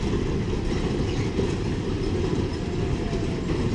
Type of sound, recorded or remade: recorded